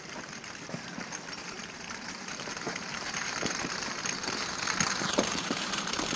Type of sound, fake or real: fake